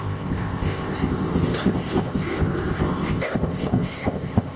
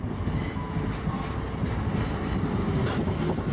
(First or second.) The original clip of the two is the second